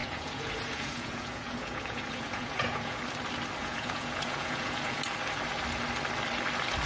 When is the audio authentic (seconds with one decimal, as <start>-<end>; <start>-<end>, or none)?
3.0-3.6; 5.0-6.9